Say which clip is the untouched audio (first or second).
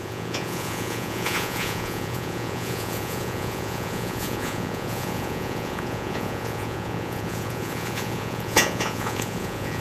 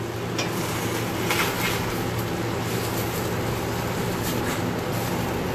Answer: second